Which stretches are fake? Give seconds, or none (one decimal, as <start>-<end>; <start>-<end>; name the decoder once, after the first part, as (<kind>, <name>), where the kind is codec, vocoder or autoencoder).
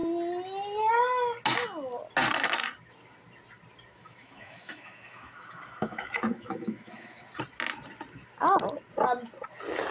4.0-7.2 (autoencoder, DAC-VAE)